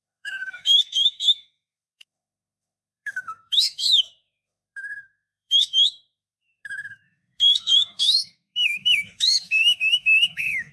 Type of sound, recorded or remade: remade